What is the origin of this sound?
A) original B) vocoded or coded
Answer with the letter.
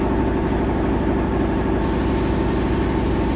A